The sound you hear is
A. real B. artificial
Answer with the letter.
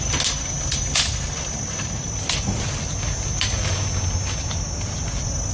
A